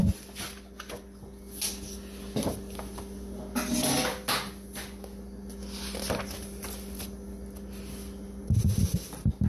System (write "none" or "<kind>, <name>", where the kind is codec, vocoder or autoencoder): none